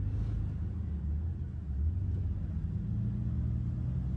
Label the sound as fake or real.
real